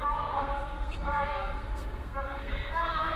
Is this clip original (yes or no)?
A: no